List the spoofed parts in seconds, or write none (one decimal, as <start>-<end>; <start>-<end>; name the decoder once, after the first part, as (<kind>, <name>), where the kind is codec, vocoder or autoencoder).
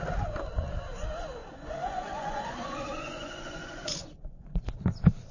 1.4-4.6 (vocoder, Vocos)